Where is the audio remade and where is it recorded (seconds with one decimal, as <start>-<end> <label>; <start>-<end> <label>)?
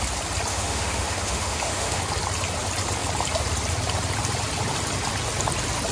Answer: 0.0-0.5 recorded; 0.5-2.0 remade; 2.0-5.9 recorded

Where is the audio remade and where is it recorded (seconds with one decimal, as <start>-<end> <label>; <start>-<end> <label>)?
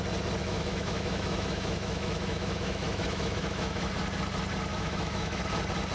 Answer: 0.0-0.4 recorded; 0.4-3.9 remade; 3.9-4.7 recorded; 4.7-5.4 remade; 5.4-5.9 recorded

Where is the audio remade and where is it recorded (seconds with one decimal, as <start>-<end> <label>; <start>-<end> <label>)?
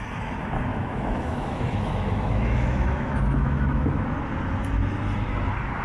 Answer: 0.0-0.7 recorded; 0.7-4.0 remade; 4.0-5.8 recorded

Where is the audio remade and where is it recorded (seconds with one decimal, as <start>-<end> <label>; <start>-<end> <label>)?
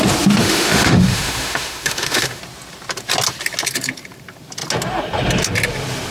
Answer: 0.0-0.4 recorded; 0.4-2.4 remade; 2.4-6.1 recorded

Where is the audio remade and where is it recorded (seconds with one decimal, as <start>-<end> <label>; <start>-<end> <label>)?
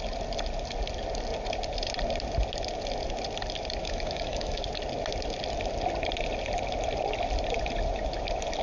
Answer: 0.0-3.8 recorded; 3.8-4.6 remade; 4.6-8.6 recorded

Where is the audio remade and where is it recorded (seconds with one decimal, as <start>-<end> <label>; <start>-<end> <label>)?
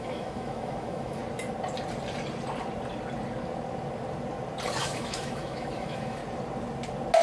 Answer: 0.0-1.2 remade; 1.2-4.8 recorded; 4.8-6.2 remade; 6.2-7.2 recorded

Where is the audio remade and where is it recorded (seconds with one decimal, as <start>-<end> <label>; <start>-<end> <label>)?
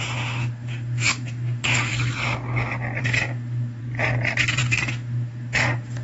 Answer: 0.0-1.9 remade; 1.9-3.0 recorded; 3.0-3.8 remade; 3.8-4.6 recorded; 4.6-6.0 remade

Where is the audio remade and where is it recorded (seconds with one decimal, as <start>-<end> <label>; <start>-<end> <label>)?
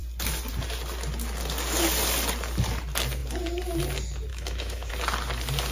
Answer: 0.0-4.3 recorded; 4.3-4.9 remade; 4.9-5.7 recorded